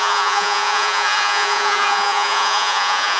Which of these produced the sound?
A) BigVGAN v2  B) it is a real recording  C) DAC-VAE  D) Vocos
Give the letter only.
D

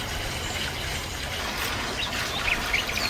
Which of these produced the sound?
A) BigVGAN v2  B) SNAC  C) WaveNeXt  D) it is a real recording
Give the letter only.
D